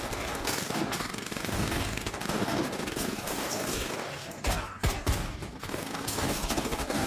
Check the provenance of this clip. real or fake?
fake